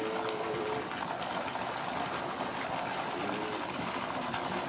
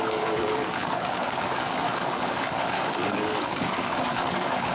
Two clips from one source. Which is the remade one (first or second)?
second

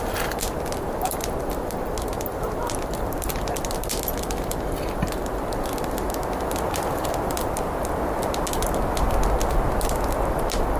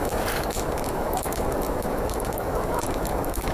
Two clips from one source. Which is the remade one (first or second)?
second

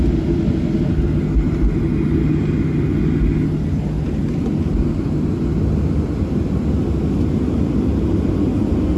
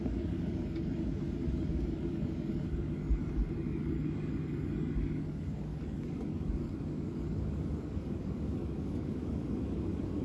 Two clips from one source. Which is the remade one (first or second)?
second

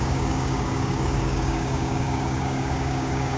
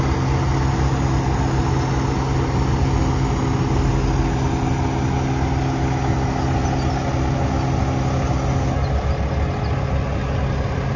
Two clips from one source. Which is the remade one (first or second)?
first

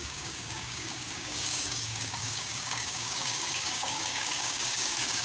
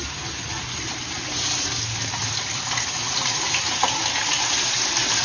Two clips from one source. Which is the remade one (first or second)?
first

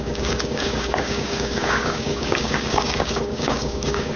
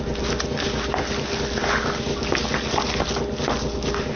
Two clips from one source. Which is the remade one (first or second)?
first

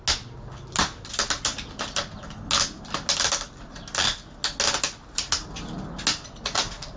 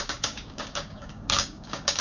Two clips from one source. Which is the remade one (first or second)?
second